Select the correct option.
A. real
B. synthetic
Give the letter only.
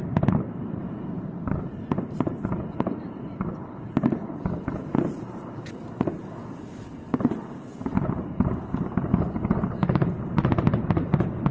B